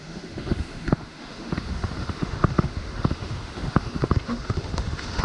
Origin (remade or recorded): remade